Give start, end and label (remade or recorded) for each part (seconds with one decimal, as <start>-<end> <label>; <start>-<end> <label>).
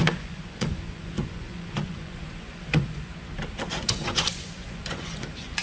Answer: 0.0-3.1 remade; 3.1-3.7 recorded; 3.7-5.6 remade